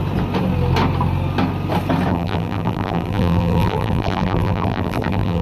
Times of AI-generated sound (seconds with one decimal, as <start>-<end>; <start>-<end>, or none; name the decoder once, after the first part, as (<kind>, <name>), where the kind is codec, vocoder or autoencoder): 2.1-5.4 (vocoder, BigVGAN v2)